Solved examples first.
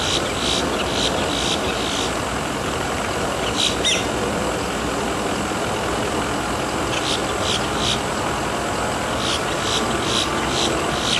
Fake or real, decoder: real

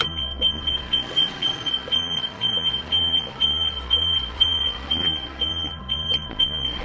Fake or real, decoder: fake, vocoder, Vocos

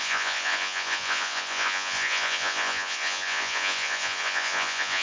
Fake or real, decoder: fake, vocoder, Vocos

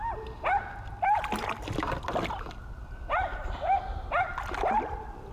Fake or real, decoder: real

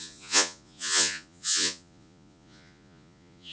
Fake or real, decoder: fake, vocoder, Vocos